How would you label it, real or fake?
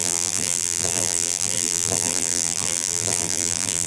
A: fake